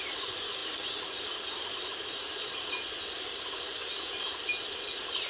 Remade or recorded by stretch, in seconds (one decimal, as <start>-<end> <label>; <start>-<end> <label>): 0.0-5.3 recorded